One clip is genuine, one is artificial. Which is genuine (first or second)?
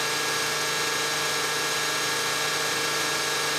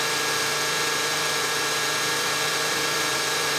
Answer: first